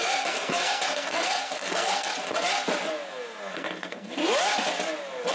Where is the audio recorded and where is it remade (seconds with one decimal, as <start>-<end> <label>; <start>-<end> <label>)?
0.0-2.1 remade; 2.1-3.5 recorded; 3.5-4.2 remade; 4.2-5.3 recorded